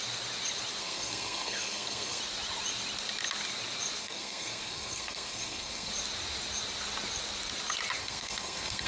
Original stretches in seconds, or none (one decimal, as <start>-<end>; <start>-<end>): 0.0-0.8; 2.2-4.0; 5.9-8.0